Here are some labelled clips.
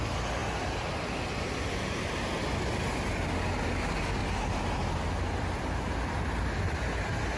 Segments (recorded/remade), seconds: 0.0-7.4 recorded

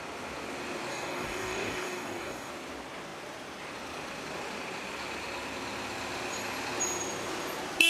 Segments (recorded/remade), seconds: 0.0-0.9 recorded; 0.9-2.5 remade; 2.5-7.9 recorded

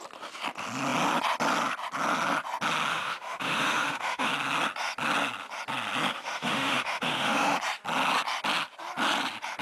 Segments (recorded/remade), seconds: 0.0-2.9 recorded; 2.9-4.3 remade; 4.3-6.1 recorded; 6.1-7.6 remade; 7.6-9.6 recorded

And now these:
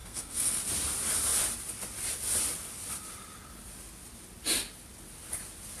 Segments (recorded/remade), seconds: 0.0-0.6 remade; 0.6-5.8 recorded

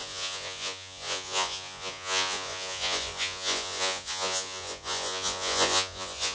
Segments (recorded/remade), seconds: 0.0-6.3 remade